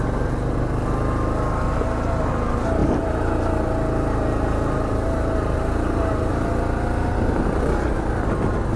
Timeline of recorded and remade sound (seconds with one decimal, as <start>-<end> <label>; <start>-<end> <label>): 0.0-8.8 recorded